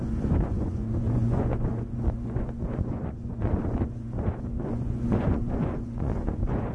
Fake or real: fake